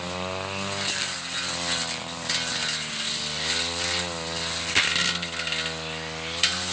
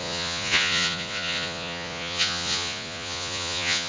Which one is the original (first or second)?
first